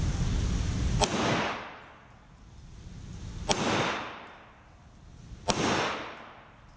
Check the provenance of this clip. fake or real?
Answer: real